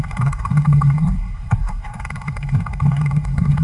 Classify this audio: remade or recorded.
remade